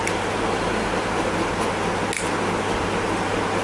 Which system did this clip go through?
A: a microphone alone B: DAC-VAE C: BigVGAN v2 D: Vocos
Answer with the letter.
A